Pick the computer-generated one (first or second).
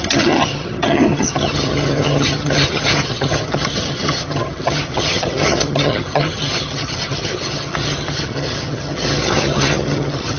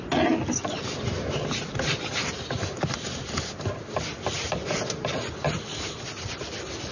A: first